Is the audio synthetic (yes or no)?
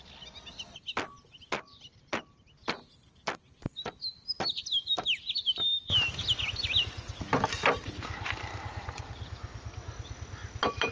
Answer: no